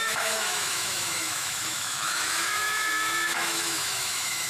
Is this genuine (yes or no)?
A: no